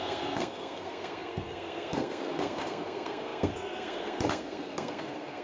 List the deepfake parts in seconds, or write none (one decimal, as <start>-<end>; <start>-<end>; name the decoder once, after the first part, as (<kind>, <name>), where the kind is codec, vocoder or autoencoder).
0.0-5.4 (codec, SNAC)